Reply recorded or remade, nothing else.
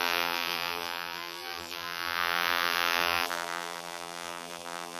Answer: remade